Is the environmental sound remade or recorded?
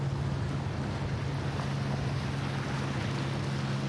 recorded